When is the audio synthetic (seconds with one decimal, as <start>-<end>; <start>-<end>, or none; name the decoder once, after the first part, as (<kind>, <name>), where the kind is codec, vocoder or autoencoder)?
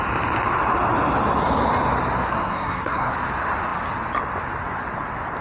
2.3-3.1 (codec, SNAC)